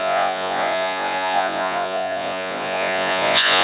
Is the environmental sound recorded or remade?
remade